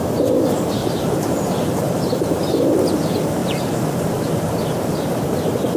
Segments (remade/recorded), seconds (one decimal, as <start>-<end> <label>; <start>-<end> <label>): 0.0-0.8 recorded; 0.8-1.9 remade; 1.9-3.4 recorded; 3.4-5.1 remade; 5.1-5.8 recorded